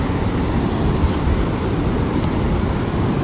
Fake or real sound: real